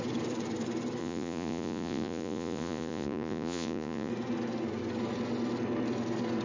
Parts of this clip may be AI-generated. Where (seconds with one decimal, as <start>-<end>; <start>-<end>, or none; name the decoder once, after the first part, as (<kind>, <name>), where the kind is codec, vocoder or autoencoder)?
1.0-4.1 (vocoder, Vocos)